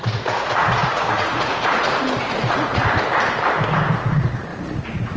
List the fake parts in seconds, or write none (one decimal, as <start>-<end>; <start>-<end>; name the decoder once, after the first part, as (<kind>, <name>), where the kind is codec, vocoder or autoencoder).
0.0-2.8 (vocoder, Vocos); 4.0-5.2